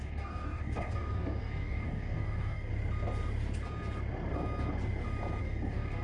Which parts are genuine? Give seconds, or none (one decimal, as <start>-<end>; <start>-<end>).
2.7-5.4